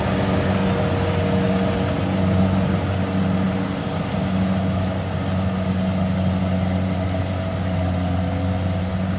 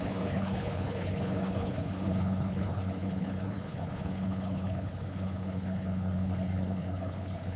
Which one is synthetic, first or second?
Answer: second